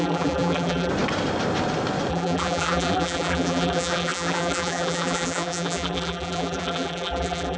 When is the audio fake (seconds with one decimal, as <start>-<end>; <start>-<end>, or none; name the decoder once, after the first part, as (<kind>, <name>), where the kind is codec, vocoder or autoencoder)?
0.0-0.9 (vocoder, BigVGAN v2); 2.1-7.6